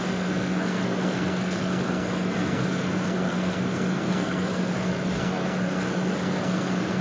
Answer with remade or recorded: remade